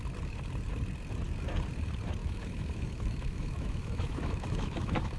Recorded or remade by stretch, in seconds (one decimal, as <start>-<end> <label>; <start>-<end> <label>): 0.0-2.2 recorded; 2.2-5.2 remade

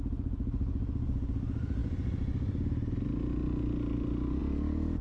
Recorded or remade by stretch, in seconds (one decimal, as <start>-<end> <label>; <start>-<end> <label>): 0.0-5.0 recorded

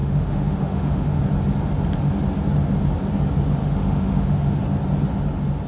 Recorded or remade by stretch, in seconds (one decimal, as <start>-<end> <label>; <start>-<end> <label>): 0.0-1.2 remade; 1.2-3.6 recorded; 3.6-4.6 remade; 4.6-5.7 recorded

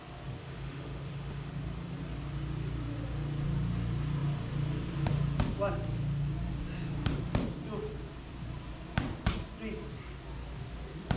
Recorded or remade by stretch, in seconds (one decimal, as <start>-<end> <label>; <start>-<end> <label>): 0.0-0.4 recorded; 0.4-1.5 remade; 1.5-11.2 recorded